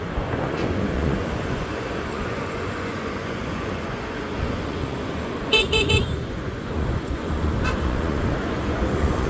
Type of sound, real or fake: fake